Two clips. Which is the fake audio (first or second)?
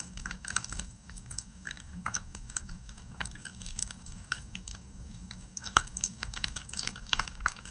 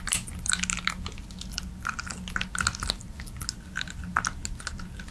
first